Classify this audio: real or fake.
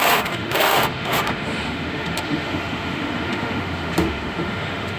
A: fake